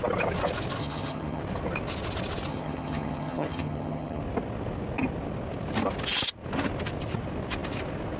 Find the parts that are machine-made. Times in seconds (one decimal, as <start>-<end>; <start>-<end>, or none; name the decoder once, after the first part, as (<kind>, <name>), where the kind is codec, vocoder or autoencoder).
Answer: 0.8-1.4 (vocoder, HiFi-GAN); 2.5-4.2